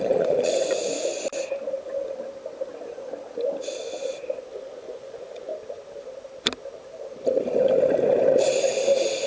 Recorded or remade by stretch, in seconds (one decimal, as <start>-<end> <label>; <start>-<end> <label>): 0.0-1.1 remade; 1.1-4.5 recorded; 4.5-5.5 remade; 5.5-9.3 recorded